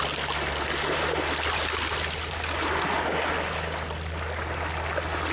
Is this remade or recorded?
recorded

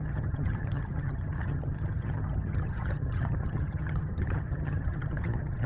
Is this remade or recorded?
remade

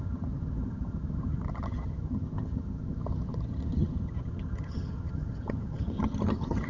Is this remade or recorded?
remade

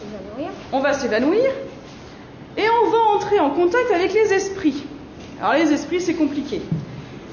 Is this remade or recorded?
recorded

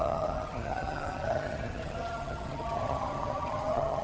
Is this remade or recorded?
remade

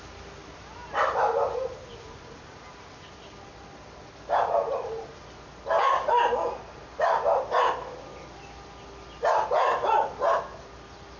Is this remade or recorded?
recorded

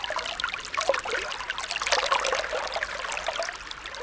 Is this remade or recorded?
recorded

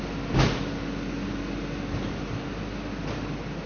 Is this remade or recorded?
recorded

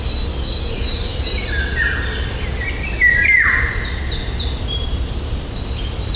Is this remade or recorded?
recorded